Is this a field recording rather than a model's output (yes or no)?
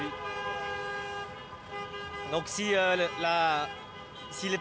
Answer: yes